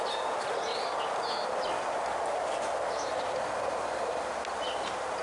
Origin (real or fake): real